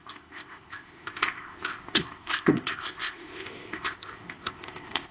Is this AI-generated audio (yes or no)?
yes